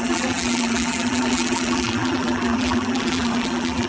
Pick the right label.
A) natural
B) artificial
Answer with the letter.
B